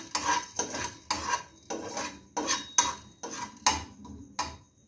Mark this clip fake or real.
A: real